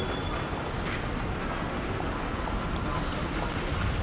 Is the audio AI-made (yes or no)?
no